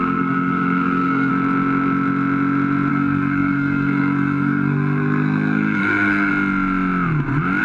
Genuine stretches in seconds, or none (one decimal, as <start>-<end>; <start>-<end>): 1.3-2.9; 6.3-7.6